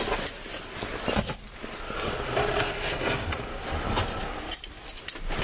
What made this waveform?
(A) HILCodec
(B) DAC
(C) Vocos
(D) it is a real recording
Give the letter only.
D